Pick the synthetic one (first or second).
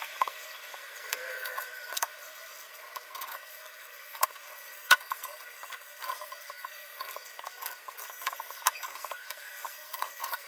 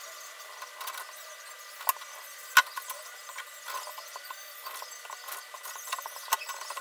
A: first